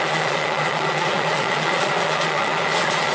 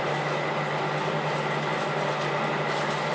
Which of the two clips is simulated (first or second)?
first